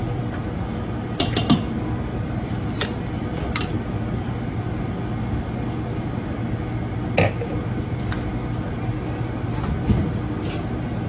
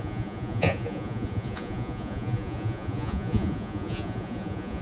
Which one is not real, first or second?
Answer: second